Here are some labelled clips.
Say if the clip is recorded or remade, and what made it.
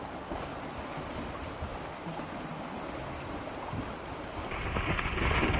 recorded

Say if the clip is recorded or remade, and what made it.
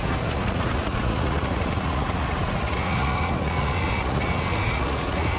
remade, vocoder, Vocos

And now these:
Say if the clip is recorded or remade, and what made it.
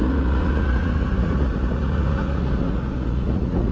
remade, vocoder, Vocos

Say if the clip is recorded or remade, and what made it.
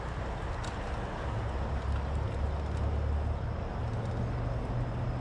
recorded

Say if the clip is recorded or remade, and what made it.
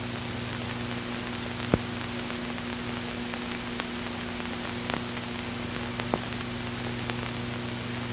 recorded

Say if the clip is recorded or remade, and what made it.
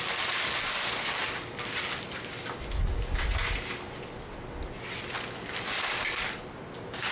recorded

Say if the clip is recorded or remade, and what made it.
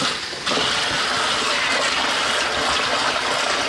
recorded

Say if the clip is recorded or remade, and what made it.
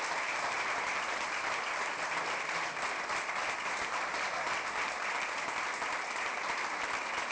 recorded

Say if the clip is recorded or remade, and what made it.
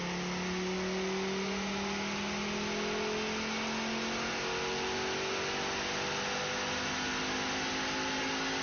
recorded